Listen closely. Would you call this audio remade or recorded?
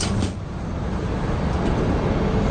recorded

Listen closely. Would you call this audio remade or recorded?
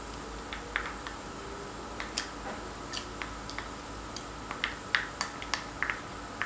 recorded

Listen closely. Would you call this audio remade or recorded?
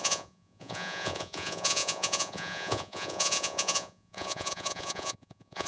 remade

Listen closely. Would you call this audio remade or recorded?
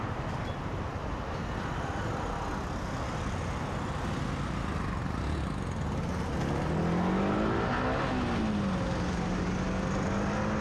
recorded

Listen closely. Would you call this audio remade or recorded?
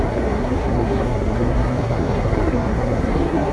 remade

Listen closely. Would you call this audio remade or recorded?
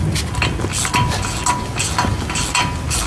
recorded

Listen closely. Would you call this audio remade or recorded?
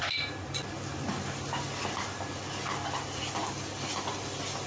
recorded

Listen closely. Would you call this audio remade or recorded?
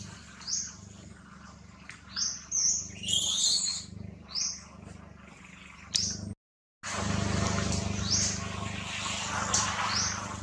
recorded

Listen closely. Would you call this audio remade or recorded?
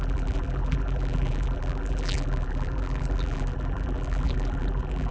remade